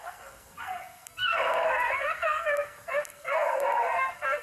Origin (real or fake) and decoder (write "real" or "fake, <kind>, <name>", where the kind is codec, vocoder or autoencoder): fake, codec, SNAC